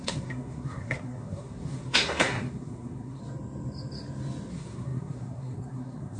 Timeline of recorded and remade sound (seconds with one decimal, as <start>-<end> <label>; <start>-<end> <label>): 0.0-3.2 remade; 3.2-4.5 recorded; 4.5-6.2 remade